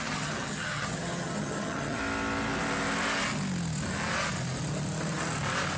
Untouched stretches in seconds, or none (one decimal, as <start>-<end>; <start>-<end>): 2.0-5.8

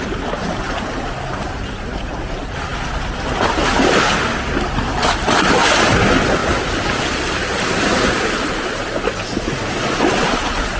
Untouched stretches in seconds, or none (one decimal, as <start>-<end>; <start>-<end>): 0.0-10.8

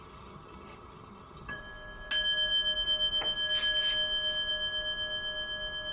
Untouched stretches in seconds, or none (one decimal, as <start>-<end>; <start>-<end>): 1.6-5.9

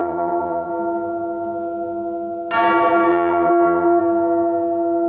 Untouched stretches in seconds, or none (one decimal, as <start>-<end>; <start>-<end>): 0.7-3.1; 4.0-5.1

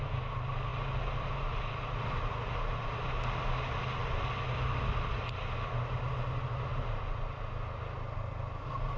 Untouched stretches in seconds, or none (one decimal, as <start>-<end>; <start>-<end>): 0.0-9.0

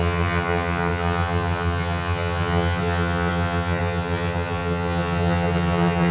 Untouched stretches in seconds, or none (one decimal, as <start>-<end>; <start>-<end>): none